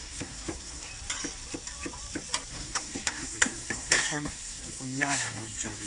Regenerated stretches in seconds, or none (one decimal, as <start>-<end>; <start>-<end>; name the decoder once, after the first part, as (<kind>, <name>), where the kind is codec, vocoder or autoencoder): 0.0-0.9 (codec, SNAC); 2.5-5.9